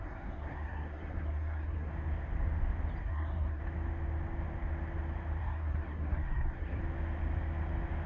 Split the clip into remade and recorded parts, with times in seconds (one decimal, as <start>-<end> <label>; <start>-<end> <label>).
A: 0.0-1.9 remade; 1.9-3.0 recorded; 3.0-3.6 remade; 3.6-5.4 recorded; 5.4-6.8 remade; 6.8-8.1 recorded